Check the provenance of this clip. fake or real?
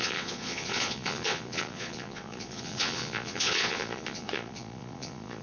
fake